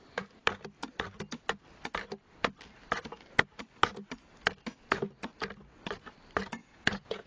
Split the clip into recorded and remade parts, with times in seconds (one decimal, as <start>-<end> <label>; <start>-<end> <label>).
0.0-6.6 recorded; 6.6-7.3 remade

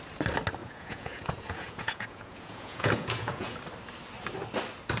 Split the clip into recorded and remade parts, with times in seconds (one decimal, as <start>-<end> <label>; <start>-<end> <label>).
0.0-0.6 recorded; 0.6-3.6 remade; 3.6-5.0 recorded

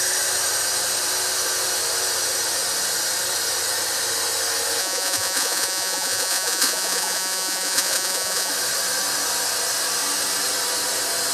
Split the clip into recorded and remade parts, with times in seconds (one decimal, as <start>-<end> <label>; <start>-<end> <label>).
0.0-4.8 recorded; 4.8-8.5 remade; 8.5-11.3 recorded

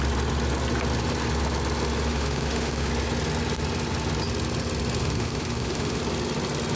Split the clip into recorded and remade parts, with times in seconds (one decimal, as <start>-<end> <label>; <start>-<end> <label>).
0.0-2.1 recorded; 2.1-2.9 remade; 2.9-5.0 recorded; 5.0-6.0 remade; 6.0-6.8 recorded

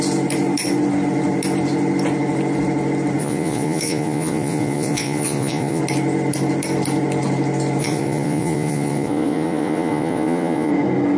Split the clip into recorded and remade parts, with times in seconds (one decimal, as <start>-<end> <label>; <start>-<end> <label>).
0.0-3.2 recorded; 3.2-5.8 remade; 5.8-7.8 recorded; 7.8-10.7 remade; 10.7-11.2 recorded

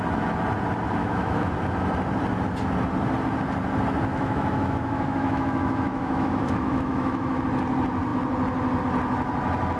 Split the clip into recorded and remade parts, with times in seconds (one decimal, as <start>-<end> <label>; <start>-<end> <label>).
0.0-1.0 recorded; 1.0-1.5 remade; 1.5-4.1 recorded; 4.1-7.4 remade; 7.4-9.8 recorded